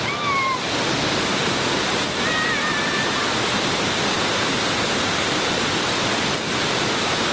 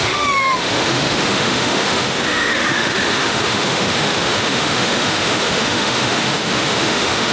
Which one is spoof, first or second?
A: second